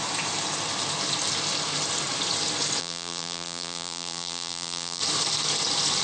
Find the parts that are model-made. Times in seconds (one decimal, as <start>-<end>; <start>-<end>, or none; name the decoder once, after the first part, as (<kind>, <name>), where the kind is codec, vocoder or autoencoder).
2.8-5.0 (vocoder, BigVGAN v2)